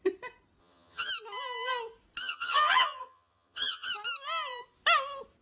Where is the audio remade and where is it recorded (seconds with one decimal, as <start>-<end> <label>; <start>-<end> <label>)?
0.0-0.6 recorded; 0.6-1.1 remade; 1.1-2.2 recorded; 2.2-3.9 remade; 3.9-5.4 recorded